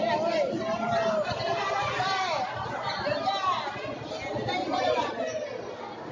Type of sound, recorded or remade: recorded